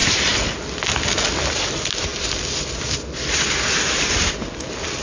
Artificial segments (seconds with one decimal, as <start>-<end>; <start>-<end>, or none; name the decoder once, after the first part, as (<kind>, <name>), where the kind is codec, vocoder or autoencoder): 0.0-0.6 (vocoder, BigVGAN v2)